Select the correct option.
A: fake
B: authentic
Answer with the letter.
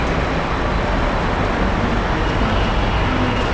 B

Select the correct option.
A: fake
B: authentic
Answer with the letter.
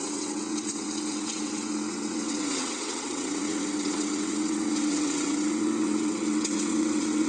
A